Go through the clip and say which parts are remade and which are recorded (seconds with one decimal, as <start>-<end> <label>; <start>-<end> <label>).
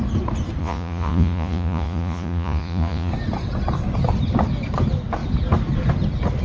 0.0-0.6 recorded; 0.6-3.1 remade; 3.1-6.4 recorded